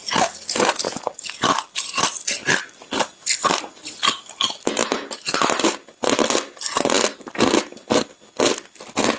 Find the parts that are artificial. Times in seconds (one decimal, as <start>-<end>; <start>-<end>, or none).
none

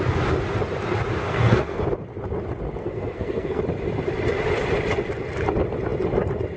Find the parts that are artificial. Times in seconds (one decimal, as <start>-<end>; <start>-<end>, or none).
1.2-1.8; 2.8-3.6